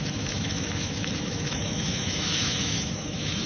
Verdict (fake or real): fake